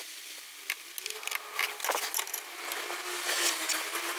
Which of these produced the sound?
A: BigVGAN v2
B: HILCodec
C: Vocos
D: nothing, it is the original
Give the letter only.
D